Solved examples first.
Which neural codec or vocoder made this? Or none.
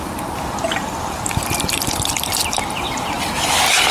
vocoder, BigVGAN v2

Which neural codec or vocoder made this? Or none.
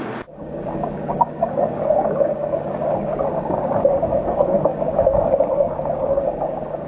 codec, DAC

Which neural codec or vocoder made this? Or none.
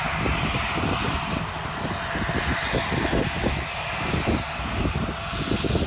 none